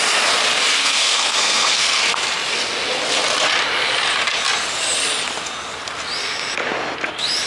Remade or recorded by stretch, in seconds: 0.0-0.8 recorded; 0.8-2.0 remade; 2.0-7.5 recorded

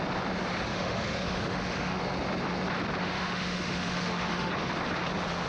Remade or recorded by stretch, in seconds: 0.0-0.7 recorded; 0.7-2.0 remade; 2.0-3.0 recorded; 3.0-4.5 remade; 4.5-5.5 recorded

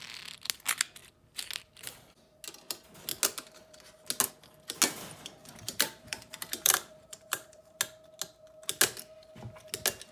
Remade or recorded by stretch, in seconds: 0.0-5.4 recorded; 5.4-7.8 remade; 7.8-10.1 recorded

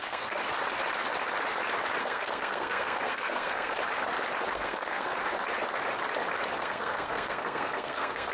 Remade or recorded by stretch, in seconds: 0.0-0.4 remade; 0.4-2.0 recorded; 2.0-3.8 remade; 3.8-4.5 recorded; 4.5-5.2 remade; 5.2-6.6 recorded; 6.6-8.3 remade

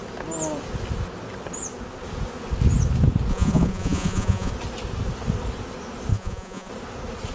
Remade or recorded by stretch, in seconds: 0.0-3.3 recorded; 3.3-4.5 remade; 4.5-6.1 recorded; 6.1-6.7 remade; 6.7-7.3 recorded

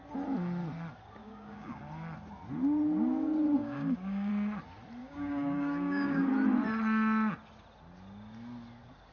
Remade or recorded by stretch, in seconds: 0.0-1.2 recorded; 1.2-1.8 remade; 1.8-3.6 recorded; 3.6-4.3 remade; 4.3-5.0 recorded; 5.0-6.3 remade; 6.3-9.1 recorded

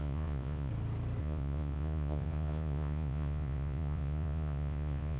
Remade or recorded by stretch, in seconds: 0.0-0.7 remade; 0.7-1.2 recorded; 1.2-5.2 remade